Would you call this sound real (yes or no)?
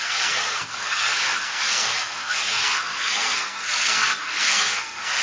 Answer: no